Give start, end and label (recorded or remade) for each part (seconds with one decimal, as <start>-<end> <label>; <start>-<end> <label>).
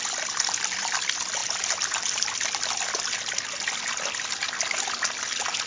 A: 0.0-5.7 recorded